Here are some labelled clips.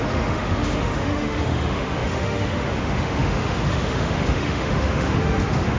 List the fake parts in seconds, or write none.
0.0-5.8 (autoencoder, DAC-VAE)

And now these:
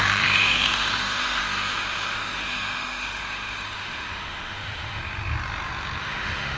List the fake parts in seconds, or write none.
0.0-5.0 (autoencoder, DAC-VAE); 6.0-6.6

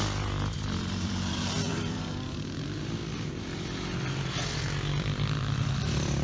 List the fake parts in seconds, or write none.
0.0-3.0 (vocoder, BigVGAN v2); 5.0-6.2

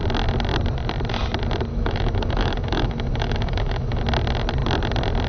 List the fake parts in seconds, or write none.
1.7-4.0 (autoencoder, DAC-VAE)